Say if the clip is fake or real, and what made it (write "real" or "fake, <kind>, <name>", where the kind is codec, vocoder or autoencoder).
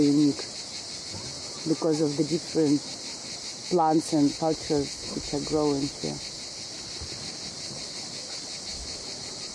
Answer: real